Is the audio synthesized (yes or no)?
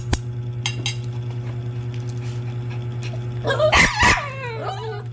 no